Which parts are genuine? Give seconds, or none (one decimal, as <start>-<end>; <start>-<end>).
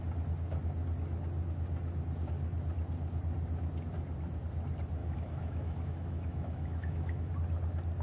0.0-5.0; 7.3-8.0